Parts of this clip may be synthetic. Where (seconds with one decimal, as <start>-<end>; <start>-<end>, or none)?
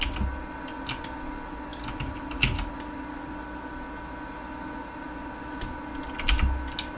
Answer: none